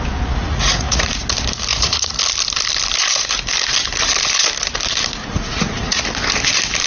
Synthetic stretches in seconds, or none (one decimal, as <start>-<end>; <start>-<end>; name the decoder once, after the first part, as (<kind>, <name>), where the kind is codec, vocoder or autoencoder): 0.4-1.2 (vocoder, Vocos); 1.7-2.2; 5.2-6.0